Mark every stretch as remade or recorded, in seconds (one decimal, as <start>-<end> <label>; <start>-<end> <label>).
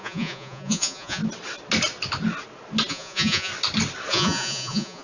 0.0-1.2 remade; 1.2-2.9 recorded; 2.9-3.5 remade; 3.5-4.1 recorded; 4.1-5.0 remade